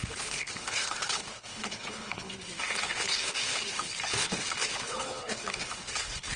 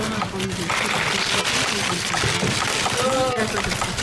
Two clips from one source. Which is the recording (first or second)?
second